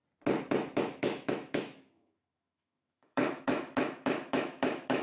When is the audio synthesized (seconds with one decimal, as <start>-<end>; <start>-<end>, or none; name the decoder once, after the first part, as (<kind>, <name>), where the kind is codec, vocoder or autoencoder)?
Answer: 0.8-5.0 (autoencoder, DAC-VAE)